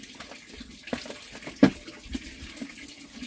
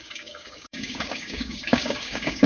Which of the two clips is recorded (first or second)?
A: first